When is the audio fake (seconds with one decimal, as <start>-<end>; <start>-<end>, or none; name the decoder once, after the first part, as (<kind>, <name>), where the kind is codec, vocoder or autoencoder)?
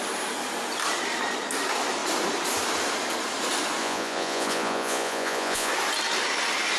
3.8-5.7 (vocoder, Vocos)